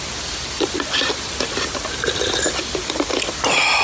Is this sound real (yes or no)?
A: yes